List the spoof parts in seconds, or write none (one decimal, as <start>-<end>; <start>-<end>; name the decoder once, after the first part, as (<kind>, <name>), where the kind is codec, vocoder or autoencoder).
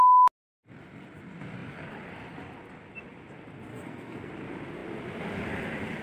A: 3.7-4.3 (codec, SNAC)